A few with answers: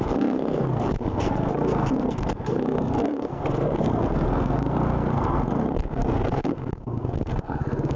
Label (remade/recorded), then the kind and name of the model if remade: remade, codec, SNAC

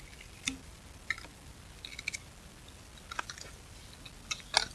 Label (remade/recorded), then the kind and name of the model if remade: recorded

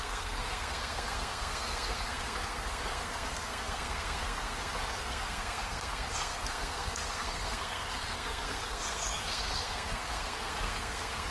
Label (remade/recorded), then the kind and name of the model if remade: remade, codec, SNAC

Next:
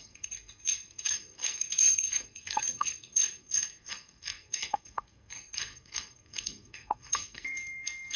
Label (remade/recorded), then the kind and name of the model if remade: remade, codec, SNAC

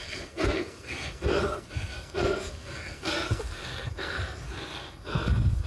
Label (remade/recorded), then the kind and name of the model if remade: remade, codec, SNAC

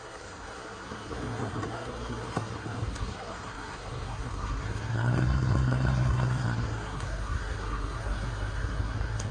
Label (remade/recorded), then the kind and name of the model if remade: remade, codec, SNAC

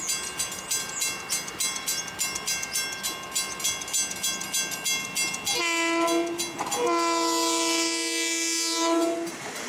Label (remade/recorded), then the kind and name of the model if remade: recorded